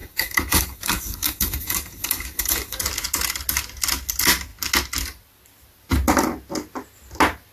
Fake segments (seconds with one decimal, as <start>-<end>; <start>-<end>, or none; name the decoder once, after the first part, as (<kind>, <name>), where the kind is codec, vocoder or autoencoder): 0.0-2.8 (codec, DAC)